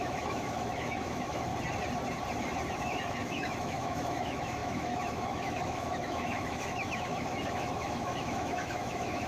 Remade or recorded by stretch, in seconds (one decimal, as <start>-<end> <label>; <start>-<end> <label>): 0.0-1.5 remade; 1.5-2.8 recorded; 2.8-9.3 remade